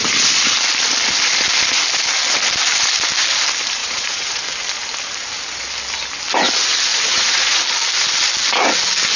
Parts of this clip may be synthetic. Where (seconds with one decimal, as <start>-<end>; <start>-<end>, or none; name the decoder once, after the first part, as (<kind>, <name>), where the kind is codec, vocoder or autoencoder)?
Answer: 3.8-4.4 (vocoder, Vocos); 6.9-7.6